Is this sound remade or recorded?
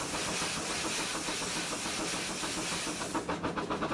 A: recorded